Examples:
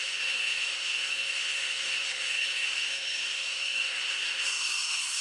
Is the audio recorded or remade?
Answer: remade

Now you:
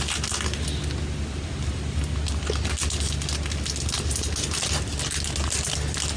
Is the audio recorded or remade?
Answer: recorded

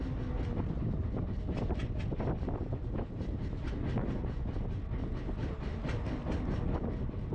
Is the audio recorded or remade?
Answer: recorded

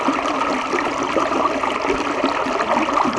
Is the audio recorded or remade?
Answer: remade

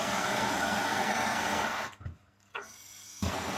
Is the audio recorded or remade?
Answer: remade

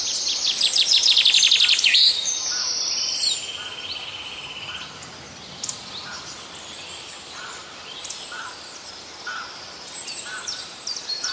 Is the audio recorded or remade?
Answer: remade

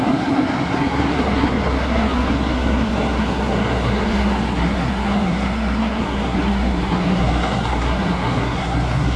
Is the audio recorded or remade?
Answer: remade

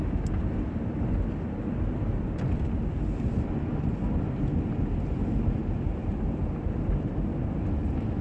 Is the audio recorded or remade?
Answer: recorded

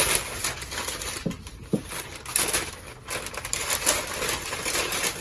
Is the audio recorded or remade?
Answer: recorded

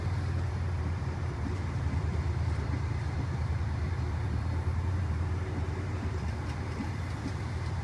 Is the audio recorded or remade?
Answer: remade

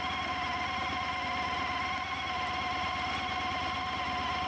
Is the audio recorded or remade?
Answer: recorded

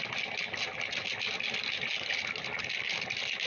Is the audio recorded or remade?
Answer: recorded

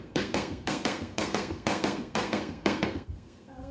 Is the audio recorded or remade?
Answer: remade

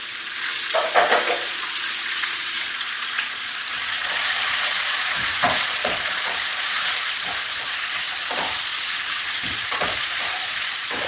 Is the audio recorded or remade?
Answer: remade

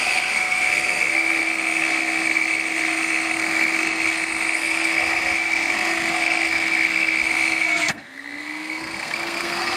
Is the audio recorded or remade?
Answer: remade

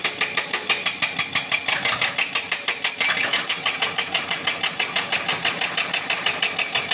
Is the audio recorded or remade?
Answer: recorded